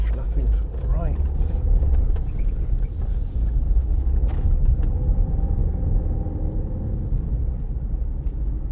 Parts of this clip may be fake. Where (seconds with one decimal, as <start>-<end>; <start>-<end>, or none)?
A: 3.8-4.9